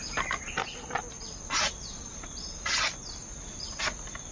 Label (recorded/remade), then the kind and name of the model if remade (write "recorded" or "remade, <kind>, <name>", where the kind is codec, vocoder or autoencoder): recorded